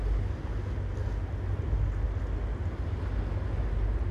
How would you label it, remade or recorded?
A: recorded